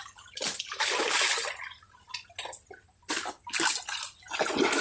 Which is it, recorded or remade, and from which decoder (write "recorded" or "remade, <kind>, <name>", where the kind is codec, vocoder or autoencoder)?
recorded